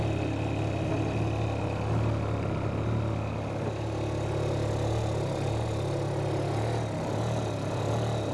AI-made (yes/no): no